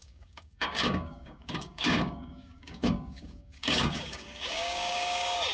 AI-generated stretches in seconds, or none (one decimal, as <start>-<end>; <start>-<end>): 0.0-5.5